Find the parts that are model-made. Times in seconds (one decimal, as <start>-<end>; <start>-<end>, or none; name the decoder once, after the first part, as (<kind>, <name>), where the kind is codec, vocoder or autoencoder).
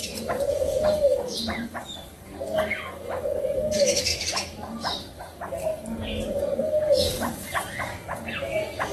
0.0-8.9 (codec, DAC)